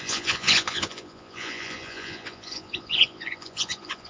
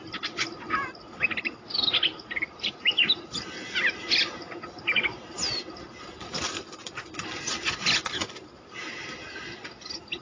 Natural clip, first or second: second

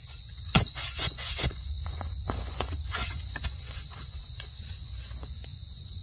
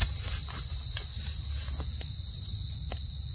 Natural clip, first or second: second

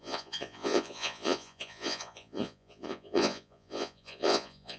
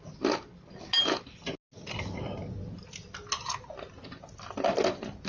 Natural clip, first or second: second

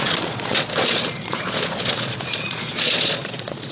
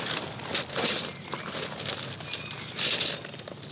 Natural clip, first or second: second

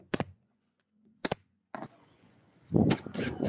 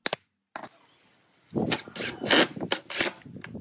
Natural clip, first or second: second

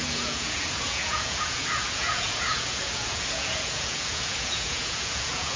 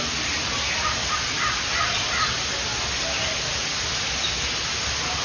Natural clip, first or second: second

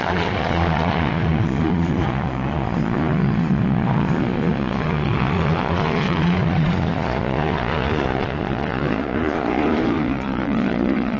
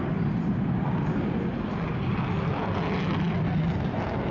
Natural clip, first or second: second